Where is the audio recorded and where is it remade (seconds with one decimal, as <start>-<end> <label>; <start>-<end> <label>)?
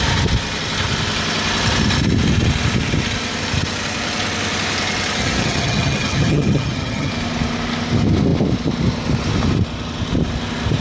0.0-5.2 recorded; 5.2-7.1 remade; 7.1-10.8 recorded